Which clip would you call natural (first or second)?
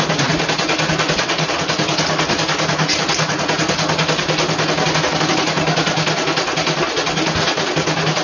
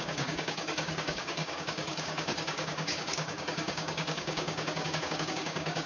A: first